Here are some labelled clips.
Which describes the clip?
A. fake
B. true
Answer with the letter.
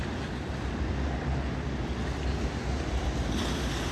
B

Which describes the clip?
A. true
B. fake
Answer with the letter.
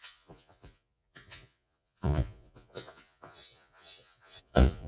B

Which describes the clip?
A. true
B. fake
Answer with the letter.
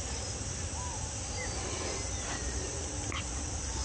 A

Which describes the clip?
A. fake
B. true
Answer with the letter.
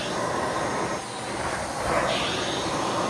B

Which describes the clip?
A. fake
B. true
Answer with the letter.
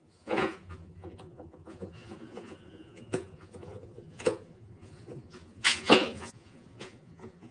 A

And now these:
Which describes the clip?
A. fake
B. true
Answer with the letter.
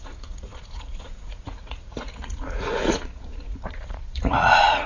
A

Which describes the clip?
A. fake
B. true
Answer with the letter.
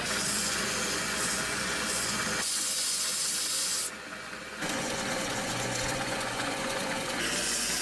A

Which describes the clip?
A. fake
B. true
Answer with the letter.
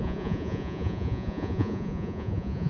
A